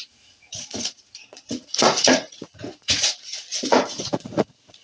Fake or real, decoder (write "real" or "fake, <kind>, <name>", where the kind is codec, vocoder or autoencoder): fake, vocoder, Vocos